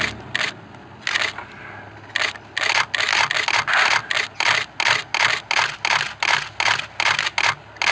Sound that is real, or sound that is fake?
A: real